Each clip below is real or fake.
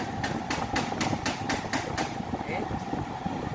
real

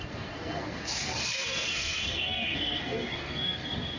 fake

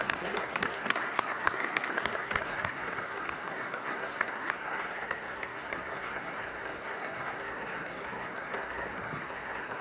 fake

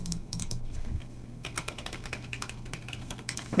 fake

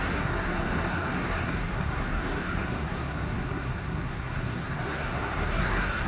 fake